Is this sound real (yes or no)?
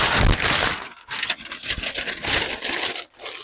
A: yes